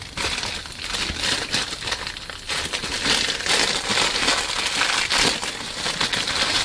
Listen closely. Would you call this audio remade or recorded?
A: recorded